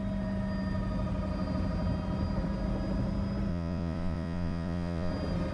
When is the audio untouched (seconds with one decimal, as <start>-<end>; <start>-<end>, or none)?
0.0-3.5; 5.1-5.5